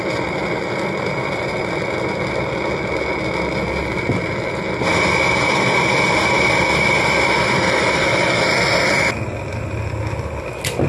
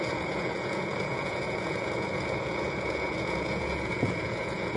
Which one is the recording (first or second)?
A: first